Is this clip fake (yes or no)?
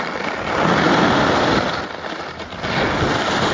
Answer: no